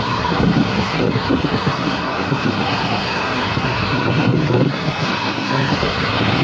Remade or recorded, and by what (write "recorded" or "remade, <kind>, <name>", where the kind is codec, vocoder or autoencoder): remade, codec, SNAC